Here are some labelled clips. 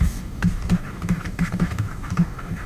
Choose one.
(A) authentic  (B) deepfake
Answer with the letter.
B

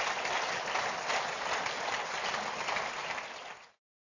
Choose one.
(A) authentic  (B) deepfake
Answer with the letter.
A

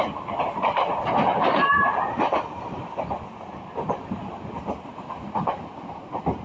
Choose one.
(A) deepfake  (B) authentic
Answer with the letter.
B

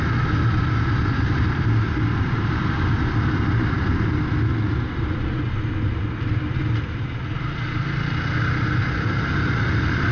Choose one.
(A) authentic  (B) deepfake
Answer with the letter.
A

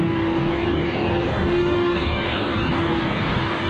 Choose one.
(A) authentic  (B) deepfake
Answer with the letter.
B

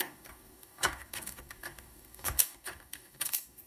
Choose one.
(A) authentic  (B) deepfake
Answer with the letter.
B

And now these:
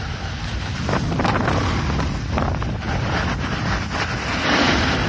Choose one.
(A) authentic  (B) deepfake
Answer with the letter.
A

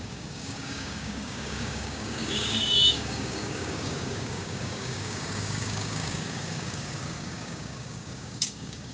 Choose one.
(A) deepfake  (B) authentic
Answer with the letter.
A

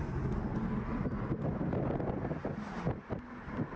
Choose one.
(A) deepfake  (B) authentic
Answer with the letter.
B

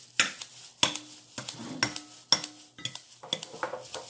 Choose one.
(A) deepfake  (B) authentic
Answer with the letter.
B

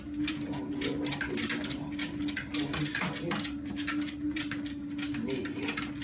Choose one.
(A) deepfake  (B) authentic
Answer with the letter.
B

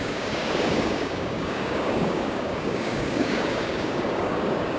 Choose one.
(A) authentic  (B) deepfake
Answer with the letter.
B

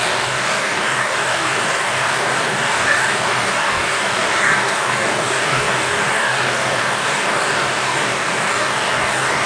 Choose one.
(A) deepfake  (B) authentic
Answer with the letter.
A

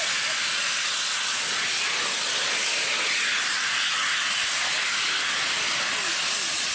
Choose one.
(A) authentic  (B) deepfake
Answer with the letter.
A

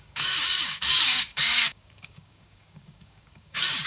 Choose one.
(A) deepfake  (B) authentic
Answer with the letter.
A